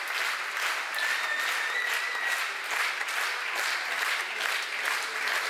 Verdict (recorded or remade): recorded